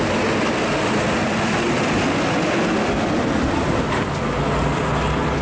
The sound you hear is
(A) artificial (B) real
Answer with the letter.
B